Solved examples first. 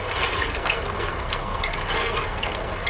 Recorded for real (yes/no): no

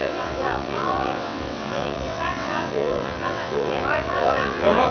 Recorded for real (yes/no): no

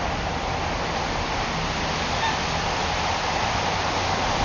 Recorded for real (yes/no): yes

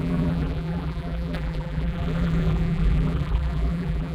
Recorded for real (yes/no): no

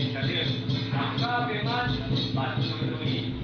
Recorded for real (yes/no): yes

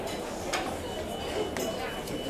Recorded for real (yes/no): yes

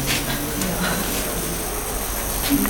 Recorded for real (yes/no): yes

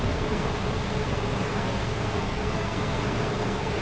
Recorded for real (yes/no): no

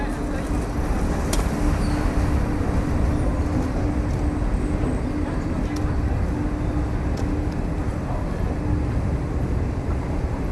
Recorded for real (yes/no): yes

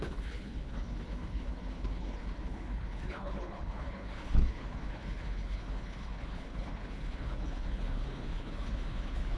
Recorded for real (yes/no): no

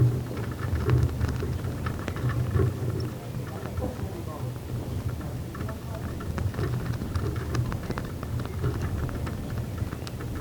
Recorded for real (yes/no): yes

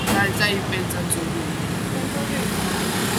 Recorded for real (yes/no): yes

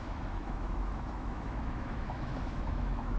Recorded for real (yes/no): no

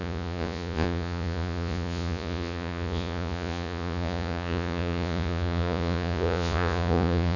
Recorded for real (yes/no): no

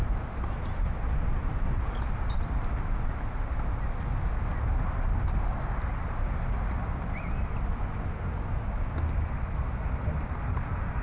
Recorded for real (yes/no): yes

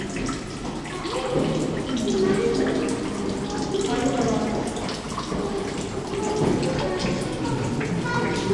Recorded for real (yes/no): yes